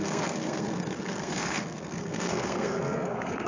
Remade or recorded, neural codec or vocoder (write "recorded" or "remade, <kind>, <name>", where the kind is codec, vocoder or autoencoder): remade, codec, SNAC